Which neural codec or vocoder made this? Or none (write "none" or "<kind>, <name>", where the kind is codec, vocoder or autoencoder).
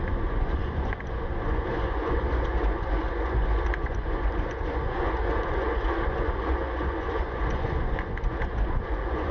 vocoder, Vocos